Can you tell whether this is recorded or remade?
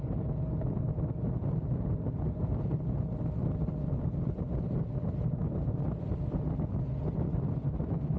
recorded